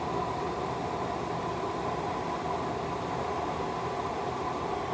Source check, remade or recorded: recorded